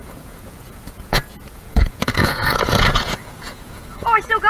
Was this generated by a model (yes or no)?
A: yes